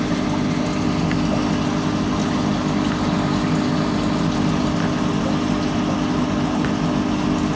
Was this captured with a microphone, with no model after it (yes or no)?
yes